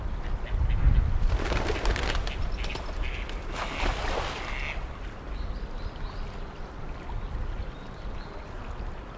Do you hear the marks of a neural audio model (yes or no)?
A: no